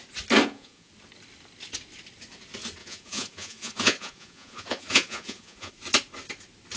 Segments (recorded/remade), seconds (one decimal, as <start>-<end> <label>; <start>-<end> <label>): 0.0-0.4 recorded; 0.4-0.9 remade; 0.9-2.8 recorded; 2.8-5.7 remade; 5.7-6.8 recorded